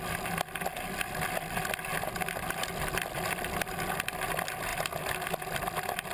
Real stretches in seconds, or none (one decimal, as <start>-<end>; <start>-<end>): 0.0-6.1